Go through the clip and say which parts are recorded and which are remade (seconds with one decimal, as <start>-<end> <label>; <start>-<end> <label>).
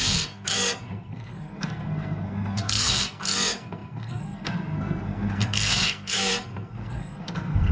0.0-7.7 remade